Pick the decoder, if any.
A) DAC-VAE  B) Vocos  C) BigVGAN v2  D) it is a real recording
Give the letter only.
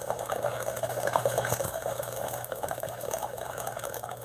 A